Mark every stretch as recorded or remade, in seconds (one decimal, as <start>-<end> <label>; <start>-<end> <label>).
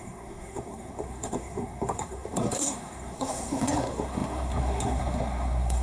0.0-5.8 remade